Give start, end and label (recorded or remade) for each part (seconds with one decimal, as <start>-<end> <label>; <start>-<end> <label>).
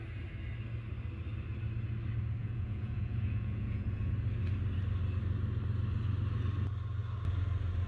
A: 0.0-2.4 recorded; 2.4-4.1 remade; 4.1-7.9 recorded